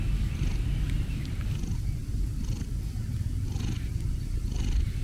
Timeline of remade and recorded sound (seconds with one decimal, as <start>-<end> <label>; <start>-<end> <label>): 0.0-5.0 recorded